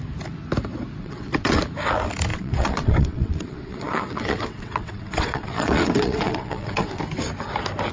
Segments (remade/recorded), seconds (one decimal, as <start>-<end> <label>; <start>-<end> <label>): 0.0-1.0 recorded; 1.0-1.6 remade; 1.6-2.3 recorded; 2.3-7.0 remade; 7.0-7.9 recorded